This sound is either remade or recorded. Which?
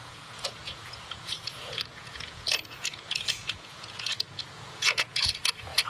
remade